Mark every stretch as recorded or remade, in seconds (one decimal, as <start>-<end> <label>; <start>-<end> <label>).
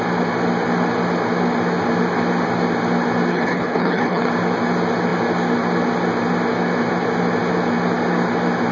0.0-3.3 recorded; 3.3-4.3 remade; 4.3-8.7 recorded